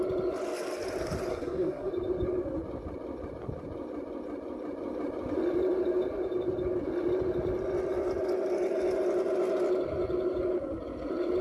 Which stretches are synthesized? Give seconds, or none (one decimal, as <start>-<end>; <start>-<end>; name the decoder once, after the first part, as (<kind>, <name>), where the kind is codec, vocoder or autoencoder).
1.3-1.9 (codec, SNAC)